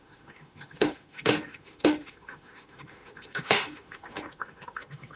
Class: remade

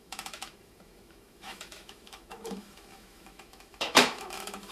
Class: remade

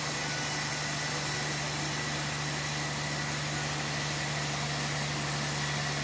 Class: recorded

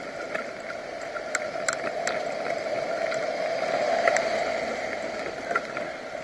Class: recorded